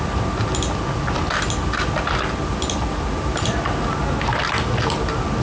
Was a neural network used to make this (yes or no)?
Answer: no